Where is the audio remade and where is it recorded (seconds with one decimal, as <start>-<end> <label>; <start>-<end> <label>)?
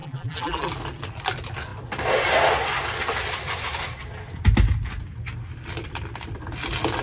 0.0-0.7 remade; 0.7-7.0 recorded